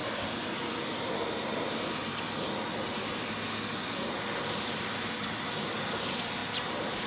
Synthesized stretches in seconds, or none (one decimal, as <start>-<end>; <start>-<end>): 4.3-7.1